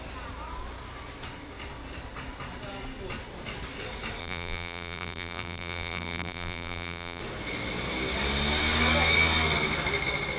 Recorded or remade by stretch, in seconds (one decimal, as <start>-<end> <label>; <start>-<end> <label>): 0.0-4.2 recorded; 4.2-7.2 remade; 7.2-10.4 recorded

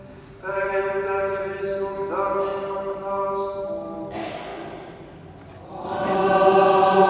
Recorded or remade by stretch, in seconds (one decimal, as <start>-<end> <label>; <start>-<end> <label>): 0.0-2.5 recorded; 2.5-4.0 remade; 4.0-7.1 recorded

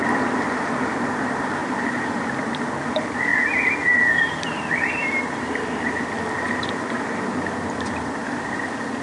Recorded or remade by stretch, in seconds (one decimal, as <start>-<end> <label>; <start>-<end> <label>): 0.0-3.3 remade; 3.3-4.1 recorded; 4.1-5.0 remade; 5.0-6.4 recorded; 6.4-9.0 remade